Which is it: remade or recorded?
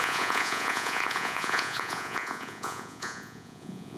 remade